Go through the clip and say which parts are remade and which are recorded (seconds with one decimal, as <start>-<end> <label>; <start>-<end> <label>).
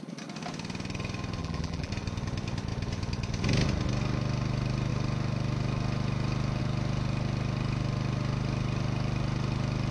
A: 0.0-1.4 recorded; 1.4-1.9 remade; 1.9-9.9 recorded